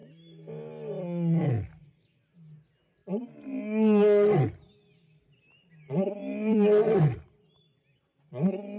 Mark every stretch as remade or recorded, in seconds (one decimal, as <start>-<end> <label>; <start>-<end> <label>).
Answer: 0.0-6.2 recorded; 6.2-7.3 remade; 7.3-8.8 recorded